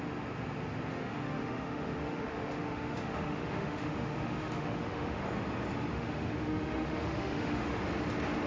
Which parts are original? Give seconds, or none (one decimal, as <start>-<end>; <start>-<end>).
0.0-0.9; 5.2-5.9; 7.8-8.5